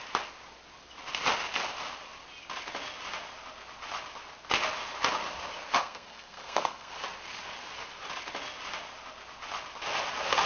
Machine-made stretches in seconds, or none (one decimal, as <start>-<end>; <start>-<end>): 5.8-6.9